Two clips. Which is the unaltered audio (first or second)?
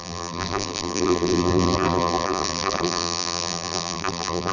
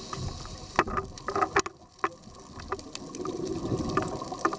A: second